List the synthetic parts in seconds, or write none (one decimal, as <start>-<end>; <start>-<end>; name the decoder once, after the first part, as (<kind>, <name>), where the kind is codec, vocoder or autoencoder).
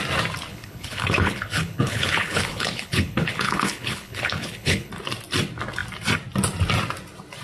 0.5-4.9 (codec, HILCodec)